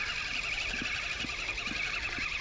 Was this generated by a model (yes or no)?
no